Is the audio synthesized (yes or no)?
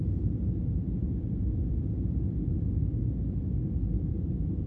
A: no